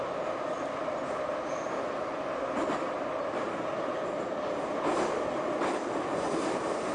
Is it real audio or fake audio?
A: real